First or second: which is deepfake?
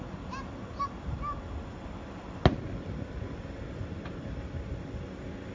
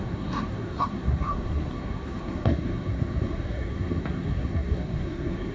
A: second